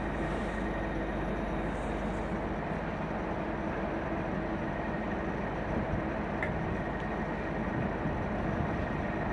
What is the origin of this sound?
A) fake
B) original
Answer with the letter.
B